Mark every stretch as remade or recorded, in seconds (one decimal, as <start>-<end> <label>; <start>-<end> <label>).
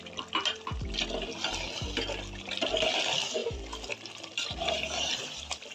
0.0-3.4 recorded; 3.4-5.1 remade; 5.1-5.7 recorded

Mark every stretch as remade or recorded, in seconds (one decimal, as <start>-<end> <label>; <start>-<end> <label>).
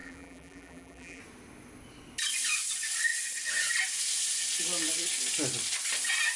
0.0-1.2 remade; 1.2-6.4 recorded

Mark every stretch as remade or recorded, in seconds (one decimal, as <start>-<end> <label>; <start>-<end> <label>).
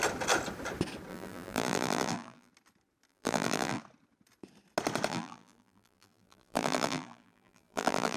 0.0-1.1 recorded; 1.1-2.5 remade; 2.5-3.1 recorded; 3.1-3.8 remade; 3.8-5.1 recorded; 5.1-8.2 remade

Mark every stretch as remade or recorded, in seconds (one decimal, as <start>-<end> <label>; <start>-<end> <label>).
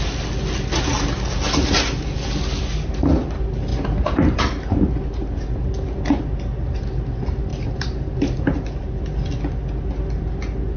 0.0-7.5 recorded; 7.5-9.0 remade; 9.0-10.8 recorded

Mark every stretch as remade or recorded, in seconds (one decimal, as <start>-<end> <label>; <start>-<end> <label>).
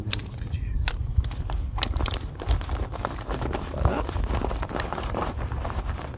0.0-1.0 remade; 1.0-4.5 recorded; 4.5-6.2 remade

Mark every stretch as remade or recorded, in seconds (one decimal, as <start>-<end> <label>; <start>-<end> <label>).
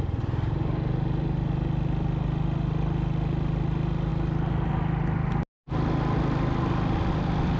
0.0-7.6 recorded